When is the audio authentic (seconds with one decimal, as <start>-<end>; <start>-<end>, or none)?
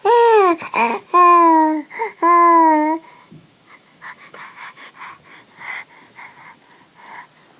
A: 0.0-0.9; 4.9-7.6